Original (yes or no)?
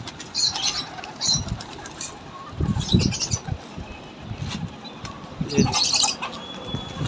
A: yes